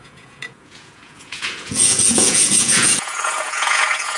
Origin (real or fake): fake